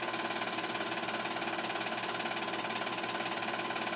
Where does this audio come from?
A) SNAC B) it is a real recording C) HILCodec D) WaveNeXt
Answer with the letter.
B